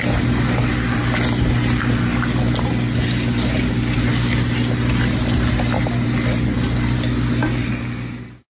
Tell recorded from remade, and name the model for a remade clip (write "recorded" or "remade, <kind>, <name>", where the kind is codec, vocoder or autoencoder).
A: recorded